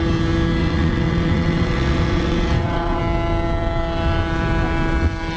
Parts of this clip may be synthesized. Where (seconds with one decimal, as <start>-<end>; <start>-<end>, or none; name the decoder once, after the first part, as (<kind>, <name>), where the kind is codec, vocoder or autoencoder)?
0.6-3.0 (vocoder, WaveNeXt)